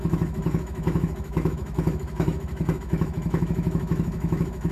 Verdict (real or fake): fake